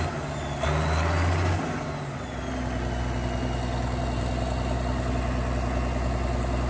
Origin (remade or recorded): recorded